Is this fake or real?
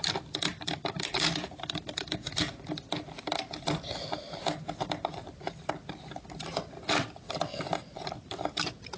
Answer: real